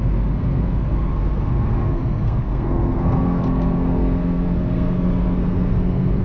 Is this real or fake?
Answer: fake